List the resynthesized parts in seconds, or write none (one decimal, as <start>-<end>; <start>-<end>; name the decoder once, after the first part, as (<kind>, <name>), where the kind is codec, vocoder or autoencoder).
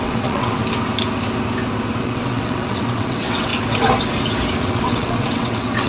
0.0-0.6 (vocoder, WaveNeXt); 2.0-3.5; 4.6-5.9